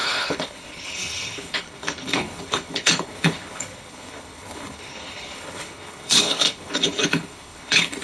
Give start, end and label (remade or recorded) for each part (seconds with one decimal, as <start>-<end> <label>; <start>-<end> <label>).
0.0-8.0 remade